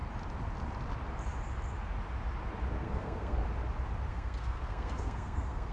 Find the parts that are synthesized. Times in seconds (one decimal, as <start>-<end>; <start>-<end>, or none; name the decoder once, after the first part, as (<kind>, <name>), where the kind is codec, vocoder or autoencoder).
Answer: 2.8-3.4 (codec, SNAC); 4.1-5.7

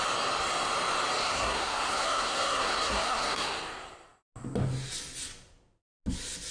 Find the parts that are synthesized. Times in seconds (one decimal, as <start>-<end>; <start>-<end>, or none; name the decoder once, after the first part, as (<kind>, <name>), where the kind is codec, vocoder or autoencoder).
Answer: 1.2-3.6 (codec, SNAC)

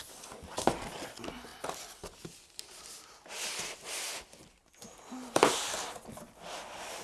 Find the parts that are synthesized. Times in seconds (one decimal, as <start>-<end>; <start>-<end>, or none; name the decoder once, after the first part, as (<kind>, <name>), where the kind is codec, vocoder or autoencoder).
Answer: none